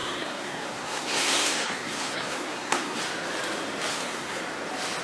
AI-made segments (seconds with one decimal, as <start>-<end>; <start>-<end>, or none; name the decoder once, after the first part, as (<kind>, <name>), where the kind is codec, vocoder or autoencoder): 0.0-3.0 (codec, SNAC); 3.9-4.4

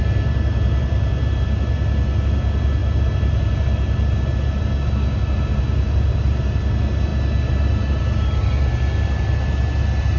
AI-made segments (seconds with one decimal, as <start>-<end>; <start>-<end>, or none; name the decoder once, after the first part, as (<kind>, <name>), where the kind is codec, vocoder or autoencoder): none

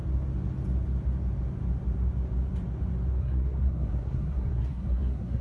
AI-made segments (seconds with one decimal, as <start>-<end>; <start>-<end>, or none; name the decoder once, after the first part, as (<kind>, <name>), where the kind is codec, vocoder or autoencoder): 3.2-5.4 (codec, SNAC)

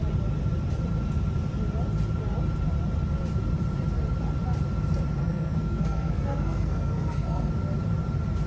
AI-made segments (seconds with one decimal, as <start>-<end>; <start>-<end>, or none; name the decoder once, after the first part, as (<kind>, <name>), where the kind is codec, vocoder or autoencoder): 5.2-7.5 (codec, SNAC)

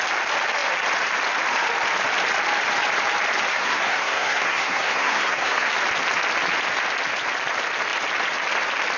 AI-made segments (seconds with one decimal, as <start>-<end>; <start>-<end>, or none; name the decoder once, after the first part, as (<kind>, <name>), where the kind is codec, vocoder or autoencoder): 3.5-5.7 (codec, SNAC)